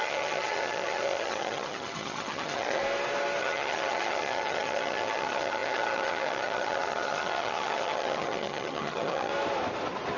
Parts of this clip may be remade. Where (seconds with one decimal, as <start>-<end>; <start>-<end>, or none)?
0.0-2.8; 3.4-9.3